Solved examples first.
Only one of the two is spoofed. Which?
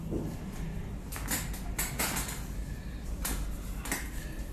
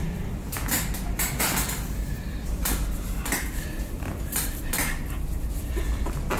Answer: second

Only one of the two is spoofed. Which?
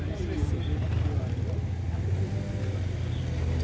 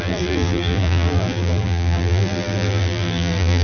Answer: second